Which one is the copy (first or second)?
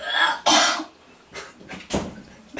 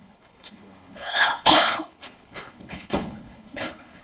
second